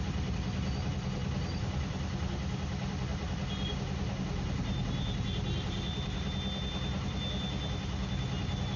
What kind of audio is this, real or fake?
real